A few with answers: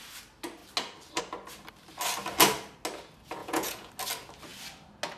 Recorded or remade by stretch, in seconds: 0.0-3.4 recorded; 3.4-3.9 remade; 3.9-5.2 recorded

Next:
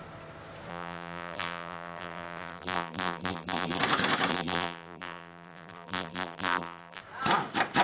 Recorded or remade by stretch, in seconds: 0.0-0.7 recorded; 0.7-3.8 remade; 3.8-4.3 recorded; 4.3-7.0 remade; 7.0-7.8 recorded